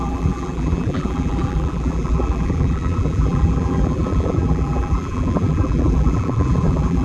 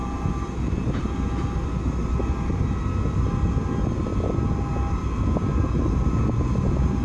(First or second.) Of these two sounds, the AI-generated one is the first